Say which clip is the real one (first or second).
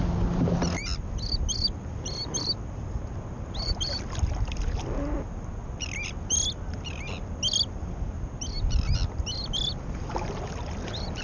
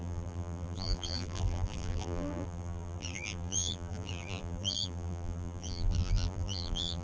first